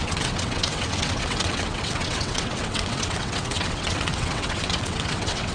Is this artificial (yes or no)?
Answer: yes